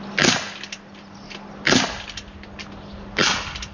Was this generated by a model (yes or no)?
no